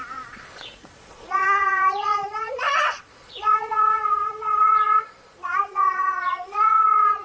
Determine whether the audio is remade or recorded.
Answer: remade